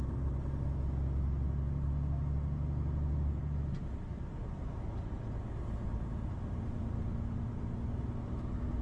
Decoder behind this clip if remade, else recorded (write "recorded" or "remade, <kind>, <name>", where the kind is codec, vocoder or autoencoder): recorded